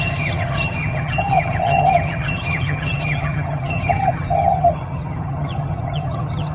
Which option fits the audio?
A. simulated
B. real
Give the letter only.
A